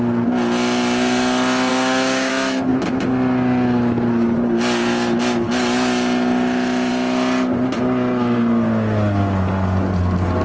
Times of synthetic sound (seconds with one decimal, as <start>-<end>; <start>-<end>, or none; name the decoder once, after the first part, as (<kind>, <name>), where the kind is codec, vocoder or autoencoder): 1.7-2.3 (codec, DAC)